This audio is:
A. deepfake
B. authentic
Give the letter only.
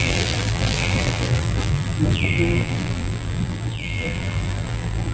A